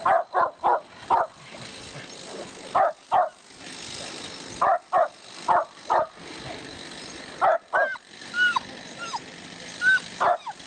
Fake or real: real